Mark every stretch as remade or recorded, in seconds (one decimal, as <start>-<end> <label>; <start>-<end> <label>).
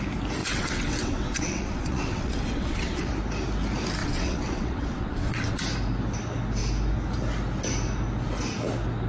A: 0.0-0.4 recorded; 0.4-3.1 remade; 3.1-4.0 recorded; 4.0-5.6 remade; 5.6-9.1 recorded